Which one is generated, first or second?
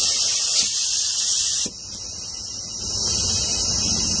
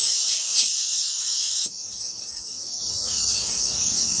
second